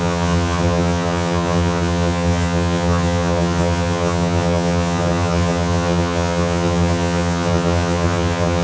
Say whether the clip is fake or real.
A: fake